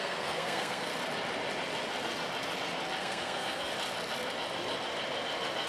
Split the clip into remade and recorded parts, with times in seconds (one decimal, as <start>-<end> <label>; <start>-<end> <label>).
0.0-0.9 remade; 0.9-3.0 recorded; 3.0-3.7 remade; 3.7-5.7 recorded